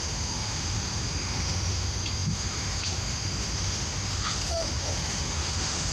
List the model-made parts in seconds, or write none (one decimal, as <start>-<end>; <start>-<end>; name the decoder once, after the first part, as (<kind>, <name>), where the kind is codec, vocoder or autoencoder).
0.0-5.9 (autoencoder, DAC-VAE)